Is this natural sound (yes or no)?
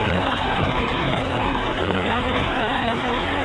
no